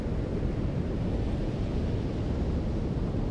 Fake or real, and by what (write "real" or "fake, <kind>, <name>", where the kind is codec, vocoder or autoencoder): real